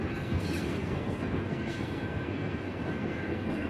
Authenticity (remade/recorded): remade